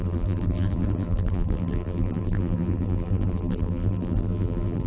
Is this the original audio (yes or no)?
no